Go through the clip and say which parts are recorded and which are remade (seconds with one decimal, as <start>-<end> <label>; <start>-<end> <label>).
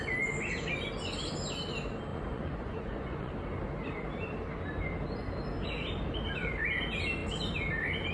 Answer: 0.0-2.1 recorded; 2.1-3.3 remade; 3.3-8.1 recorded